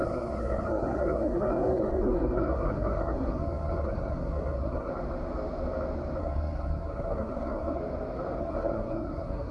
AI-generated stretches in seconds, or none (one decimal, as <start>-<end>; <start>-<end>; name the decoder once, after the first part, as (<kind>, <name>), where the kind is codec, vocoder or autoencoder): 0.0-4.9 (codec, SNAC); 6.2-7.8; 8.4-9.5

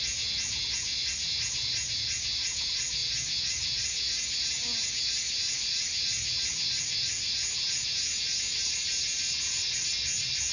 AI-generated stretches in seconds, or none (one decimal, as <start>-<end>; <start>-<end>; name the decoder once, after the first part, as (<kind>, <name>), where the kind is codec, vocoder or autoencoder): none